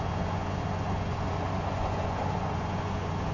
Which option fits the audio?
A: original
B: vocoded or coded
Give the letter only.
B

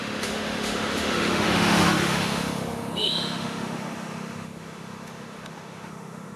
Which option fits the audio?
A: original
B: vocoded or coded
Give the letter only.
B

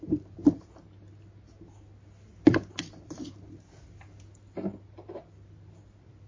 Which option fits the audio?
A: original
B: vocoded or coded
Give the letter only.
A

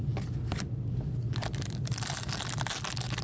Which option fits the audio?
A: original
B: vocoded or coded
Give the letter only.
A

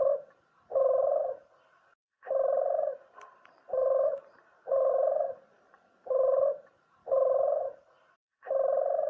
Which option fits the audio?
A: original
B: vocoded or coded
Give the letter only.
B